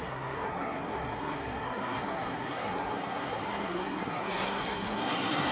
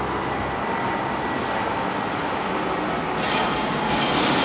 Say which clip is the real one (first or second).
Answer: second